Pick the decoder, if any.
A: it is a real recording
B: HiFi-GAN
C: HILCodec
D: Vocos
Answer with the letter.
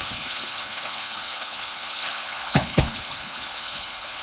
C